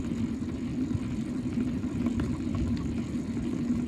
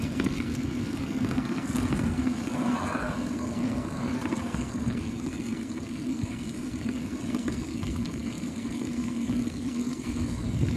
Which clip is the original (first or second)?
first